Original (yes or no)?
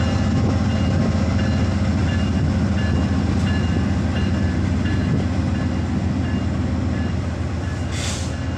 yes